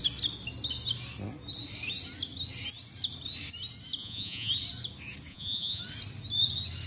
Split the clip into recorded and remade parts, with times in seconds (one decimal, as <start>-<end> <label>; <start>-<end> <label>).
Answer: 0.0-4.0 recorded; 4.0-4.5 remade; 4.5-5.3 recorded; 5.3-5.8 remade; 5.8-6.9 recorded